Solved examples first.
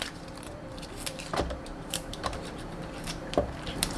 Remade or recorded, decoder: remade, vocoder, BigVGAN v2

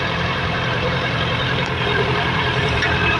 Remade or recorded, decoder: remade, vocoder, BigVGAN v2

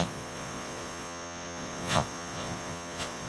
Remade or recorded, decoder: remade, vocoder, Vocos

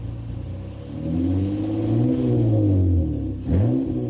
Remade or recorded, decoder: recorded